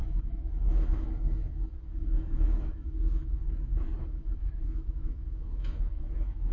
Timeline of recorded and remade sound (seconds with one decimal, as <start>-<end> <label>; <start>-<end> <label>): 0.0-3.4 remade; 3.4-4.0 recorded; 4.0-6.5 remade